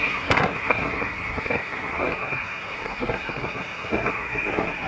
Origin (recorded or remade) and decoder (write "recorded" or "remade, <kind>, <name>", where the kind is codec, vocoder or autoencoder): remade, codec, SNAC